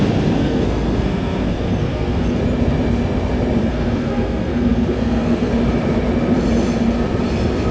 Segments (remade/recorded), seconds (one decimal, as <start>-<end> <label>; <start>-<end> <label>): 0.0-0.4 recorded; 0.4-2.4 remade; 2.4-3.6 recorded; 3.6-5.5 remade; 5.5-7.7 recorded